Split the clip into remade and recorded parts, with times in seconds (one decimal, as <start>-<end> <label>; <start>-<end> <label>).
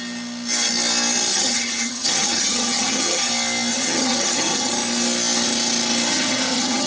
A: 0.0-1.3 recorded; 1.3-3.3 remade; 3.3-3.7 recorded; 3.7-4.7 remade; 4.7-6.1 recorded; 6.1-6.9 remade